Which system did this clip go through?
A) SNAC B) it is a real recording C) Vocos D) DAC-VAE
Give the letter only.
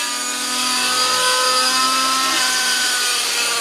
B